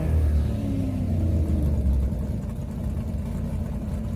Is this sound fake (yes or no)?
no